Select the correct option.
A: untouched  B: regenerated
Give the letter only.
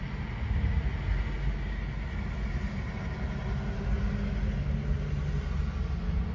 A